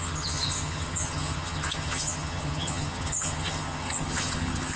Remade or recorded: remade